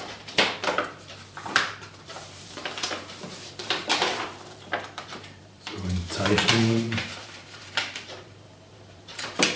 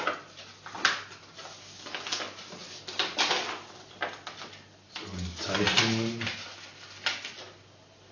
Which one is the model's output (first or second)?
first